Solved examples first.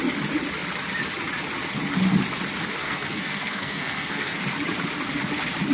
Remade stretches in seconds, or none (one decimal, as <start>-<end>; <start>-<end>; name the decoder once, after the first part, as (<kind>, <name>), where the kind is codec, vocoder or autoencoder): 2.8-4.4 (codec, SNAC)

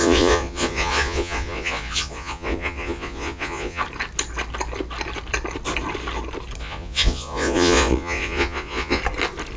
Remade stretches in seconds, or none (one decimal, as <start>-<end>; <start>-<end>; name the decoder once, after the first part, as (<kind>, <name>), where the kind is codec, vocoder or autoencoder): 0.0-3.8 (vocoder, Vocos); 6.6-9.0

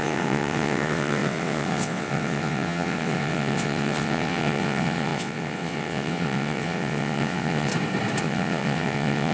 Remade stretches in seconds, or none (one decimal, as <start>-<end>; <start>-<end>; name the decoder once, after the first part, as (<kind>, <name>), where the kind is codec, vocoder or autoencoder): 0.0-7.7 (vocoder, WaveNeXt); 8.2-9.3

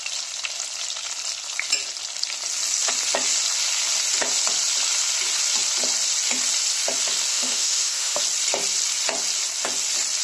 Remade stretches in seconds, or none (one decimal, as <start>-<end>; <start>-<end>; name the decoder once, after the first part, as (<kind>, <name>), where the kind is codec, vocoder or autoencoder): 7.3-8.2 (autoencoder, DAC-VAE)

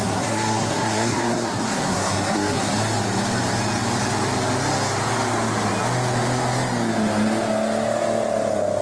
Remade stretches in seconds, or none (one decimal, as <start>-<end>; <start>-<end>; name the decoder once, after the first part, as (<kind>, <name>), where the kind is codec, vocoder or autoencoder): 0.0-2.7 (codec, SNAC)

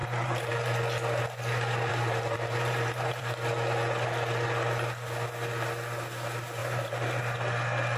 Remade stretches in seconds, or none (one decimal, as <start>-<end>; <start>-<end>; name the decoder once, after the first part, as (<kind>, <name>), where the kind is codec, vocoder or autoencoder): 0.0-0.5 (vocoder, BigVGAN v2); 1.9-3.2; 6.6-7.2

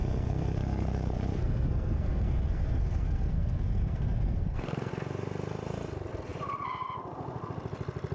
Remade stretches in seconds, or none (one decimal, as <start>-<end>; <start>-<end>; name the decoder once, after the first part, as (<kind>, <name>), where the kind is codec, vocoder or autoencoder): 0.0-4.9 (codec, SNAC)